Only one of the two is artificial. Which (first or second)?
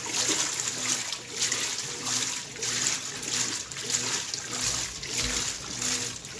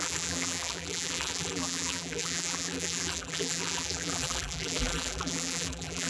second